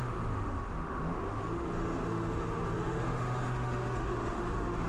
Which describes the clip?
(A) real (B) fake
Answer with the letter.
B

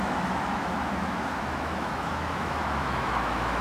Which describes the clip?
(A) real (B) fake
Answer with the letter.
B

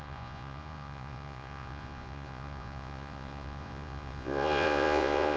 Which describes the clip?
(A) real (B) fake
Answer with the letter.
B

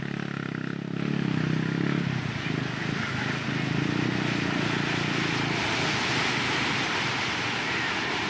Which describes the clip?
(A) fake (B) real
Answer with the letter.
B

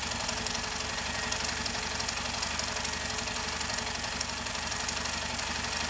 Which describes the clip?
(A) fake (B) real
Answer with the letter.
B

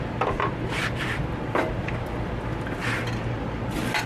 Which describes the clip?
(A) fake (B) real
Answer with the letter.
B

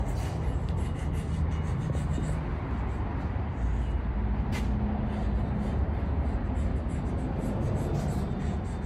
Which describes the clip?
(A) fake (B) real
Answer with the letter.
B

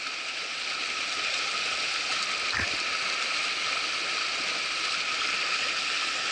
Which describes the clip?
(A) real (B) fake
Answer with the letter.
A